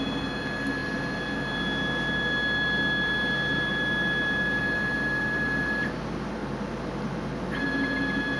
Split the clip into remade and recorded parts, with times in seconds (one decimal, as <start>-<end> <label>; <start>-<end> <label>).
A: 0.0-8.4 recorded